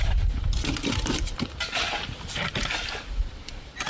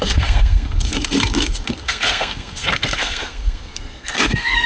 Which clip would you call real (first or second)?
first